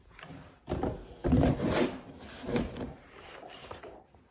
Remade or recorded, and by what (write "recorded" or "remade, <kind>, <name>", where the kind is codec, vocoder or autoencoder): remade, vocoder, BigVGAN v2